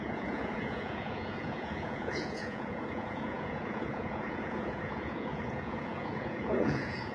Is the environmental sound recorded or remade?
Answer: remade